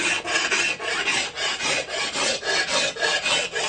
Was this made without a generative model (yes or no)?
yes